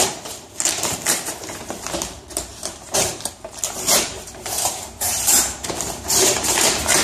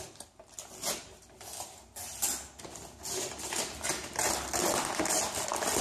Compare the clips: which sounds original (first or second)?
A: second